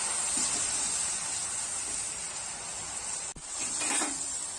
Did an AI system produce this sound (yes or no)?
no